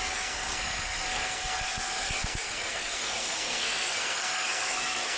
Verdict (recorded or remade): remade